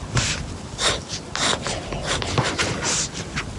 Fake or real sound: real